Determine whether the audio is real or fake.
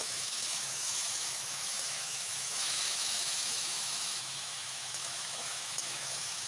fake